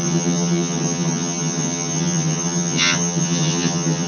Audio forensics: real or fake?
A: fake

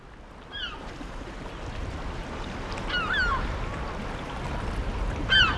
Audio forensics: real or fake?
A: real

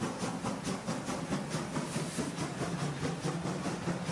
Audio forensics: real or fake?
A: real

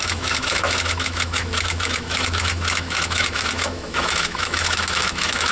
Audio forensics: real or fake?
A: fake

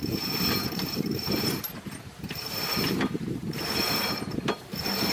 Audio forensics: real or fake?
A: fake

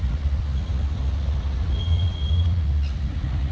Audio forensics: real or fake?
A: fake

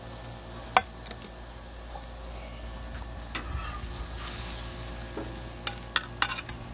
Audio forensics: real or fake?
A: real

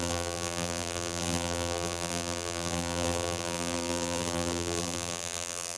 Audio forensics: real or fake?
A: fake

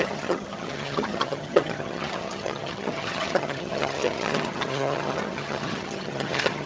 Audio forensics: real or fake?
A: fake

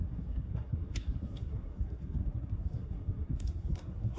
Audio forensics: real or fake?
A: fake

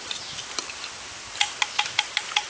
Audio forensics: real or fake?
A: real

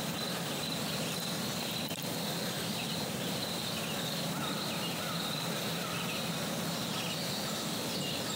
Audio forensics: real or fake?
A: real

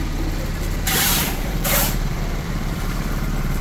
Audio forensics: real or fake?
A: fake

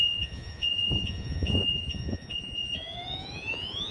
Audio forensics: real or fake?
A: fake